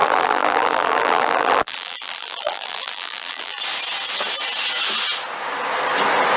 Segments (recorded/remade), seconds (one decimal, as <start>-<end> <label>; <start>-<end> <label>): 0.0-3.6 remade; 3.6-6.4 recorded